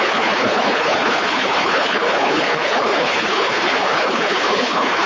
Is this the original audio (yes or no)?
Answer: no